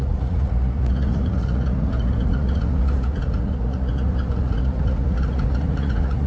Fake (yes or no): yes